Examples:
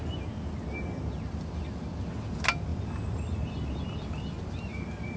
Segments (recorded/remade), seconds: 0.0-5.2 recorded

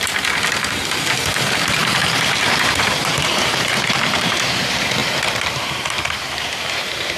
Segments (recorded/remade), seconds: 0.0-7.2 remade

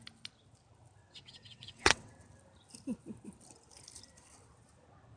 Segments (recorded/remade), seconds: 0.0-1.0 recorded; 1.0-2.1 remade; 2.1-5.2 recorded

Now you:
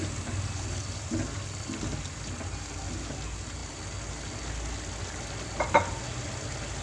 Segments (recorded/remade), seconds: 0.0-6.8 recorded